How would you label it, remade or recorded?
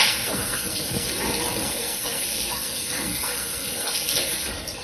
remade